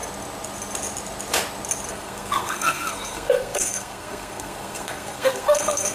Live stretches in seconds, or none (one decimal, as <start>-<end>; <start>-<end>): 0.0-1.9